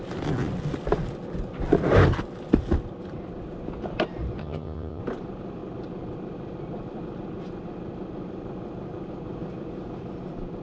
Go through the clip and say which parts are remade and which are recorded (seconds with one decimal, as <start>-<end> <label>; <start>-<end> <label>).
0.0-4.4 recorded; 4.4-5.0 remade; 5.0-10.6 recorded

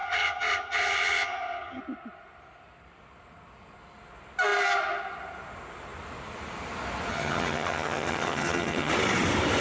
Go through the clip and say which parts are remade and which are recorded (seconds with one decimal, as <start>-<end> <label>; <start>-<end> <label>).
0.0-1.8 remade; 1.8-7.1 recorded; 7.1-8.9 remade; 8.9-9.6 recorded

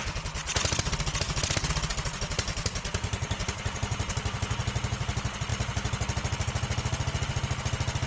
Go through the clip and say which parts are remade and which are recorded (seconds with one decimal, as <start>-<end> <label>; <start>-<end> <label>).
0.0-8.1 recorded

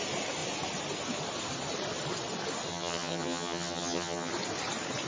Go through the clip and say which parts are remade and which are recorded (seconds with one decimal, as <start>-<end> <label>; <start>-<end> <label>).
0.0-2.7 recorded; 2.7-4.3 remade; 4.3-5.1 recorded

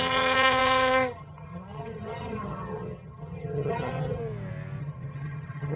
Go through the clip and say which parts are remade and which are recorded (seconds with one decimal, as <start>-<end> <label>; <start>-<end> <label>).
0.0-4.2 remade; 4.2-4.8 recorded; 4.8-5.8 remade